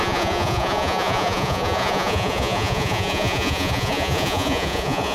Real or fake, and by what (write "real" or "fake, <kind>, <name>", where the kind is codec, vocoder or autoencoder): fake, vocoder, Vocos